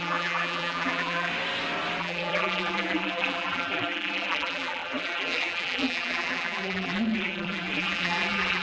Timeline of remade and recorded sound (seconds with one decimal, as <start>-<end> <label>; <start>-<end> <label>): 0.0-1.3 remade; 1.3-2.0 recorded; 2.0-8.6 remade